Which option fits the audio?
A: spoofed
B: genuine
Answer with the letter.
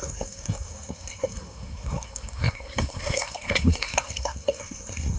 A